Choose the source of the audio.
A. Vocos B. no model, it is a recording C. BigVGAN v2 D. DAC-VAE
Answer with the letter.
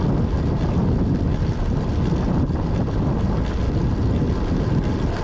B